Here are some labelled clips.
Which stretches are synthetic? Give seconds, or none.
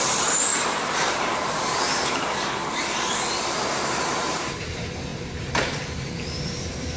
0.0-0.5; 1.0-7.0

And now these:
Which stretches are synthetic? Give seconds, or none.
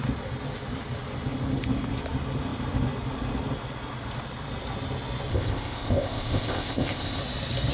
5.3-7.2